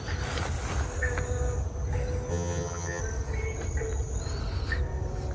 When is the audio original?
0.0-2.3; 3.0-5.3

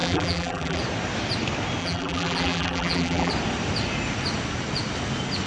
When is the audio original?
0.8-1.8; 3.3-5.5

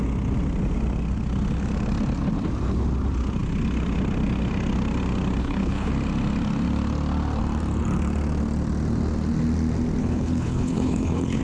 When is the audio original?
0.0-5.4; 5.9-10.0

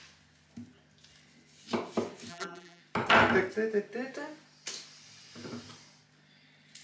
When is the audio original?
0.0-2.3; 2.8-6.8

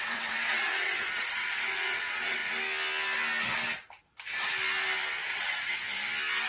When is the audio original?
2.4-5.3; 5.8-6.5

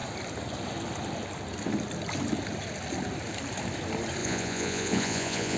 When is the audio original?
0.0-4.2

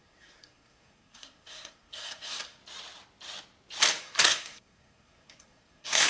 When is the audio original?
2.6-4.0